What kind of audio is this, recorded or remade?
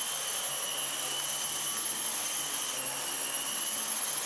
recorded